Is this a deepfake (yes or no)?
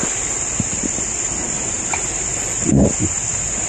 no